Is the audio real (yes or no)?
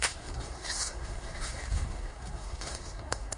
no